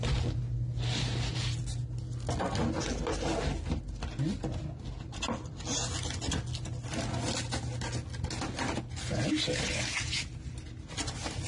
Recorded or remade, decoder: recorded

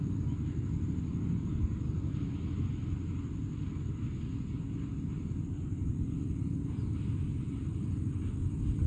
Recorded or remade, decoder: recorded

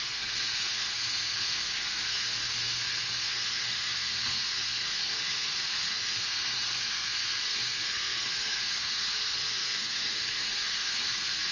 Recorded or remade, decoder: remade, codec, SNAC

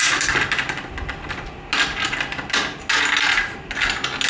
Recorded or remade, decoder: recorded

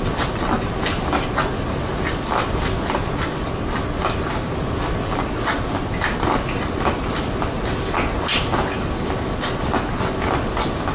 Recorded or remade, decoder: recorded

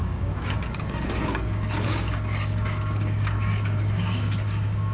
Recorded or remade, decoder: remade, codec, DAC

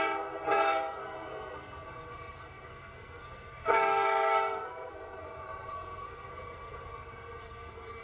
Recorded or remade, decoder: remade, codec, SNAC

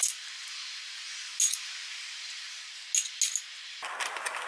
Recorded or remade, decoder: recorded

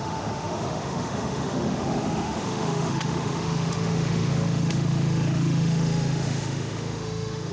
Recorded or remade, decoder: remade, autoencoder, DAC-VAE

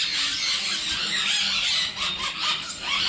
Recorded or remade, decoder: recorded